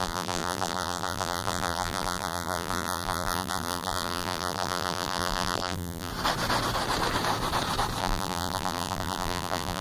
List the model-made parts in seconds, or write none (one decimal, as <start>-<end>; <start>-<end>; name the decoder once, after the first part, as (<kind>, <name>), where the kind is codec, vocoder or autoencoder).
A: 0.0-6.1 (vocoder, BigVGAN v2); 8.0-9.8